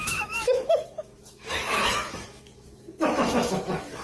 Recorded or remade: remade